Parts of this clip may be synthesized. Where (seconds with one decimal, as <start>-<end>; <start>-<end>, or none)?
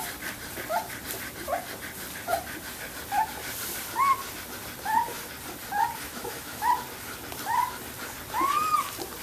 6.0-6.7